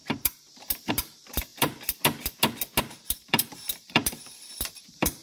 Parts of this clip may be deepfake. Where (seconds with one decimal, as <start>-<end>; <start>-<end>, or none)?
0.0-1.5; 2.8-5.2